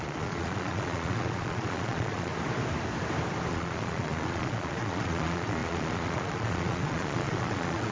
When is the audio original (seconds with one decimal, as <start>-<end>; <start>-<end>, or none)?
2.3-3.5